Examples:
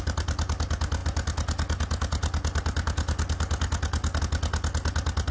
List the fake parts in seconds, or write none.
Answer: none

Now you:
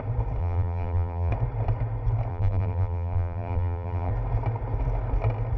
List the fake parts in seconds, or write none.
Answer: 0.4-1.3 (vocoder, BigVGAN v2); 2.3-4.1

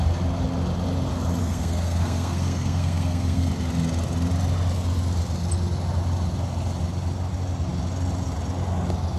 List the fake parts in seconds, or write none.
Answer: 1.4-3.5 (codec, SNAC)

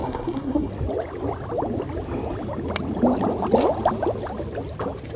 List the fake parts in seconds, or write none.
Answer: 0.0-0.7 (codec, SNAC)

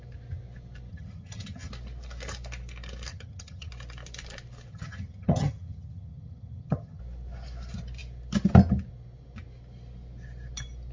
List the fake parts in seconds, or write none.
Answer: 0.9-1.7 (vocoder, HiFi-GAN); 3.1-3.7; 4.7-7.0

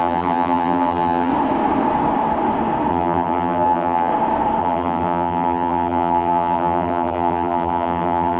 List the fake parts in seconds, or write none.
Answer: 0.0-1.3 (vocoder, BigVGAN v2); 2.9-4.1; 4.6-8.4

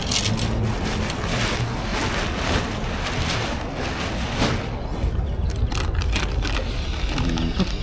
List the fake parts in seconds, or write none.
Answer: none